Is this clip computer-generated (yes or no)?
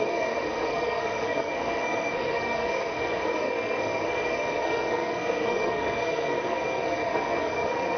yes